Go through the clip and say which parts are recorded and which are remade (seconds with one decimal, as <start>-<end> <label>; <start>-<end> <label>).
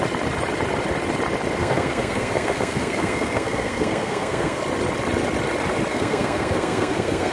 0.0-1.6 recorded; 1.6-4.6 remade; 4.6-5.9 recorded; 5.9-7.3 remade